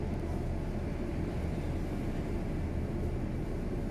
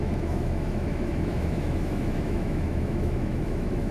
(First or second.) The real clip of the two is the first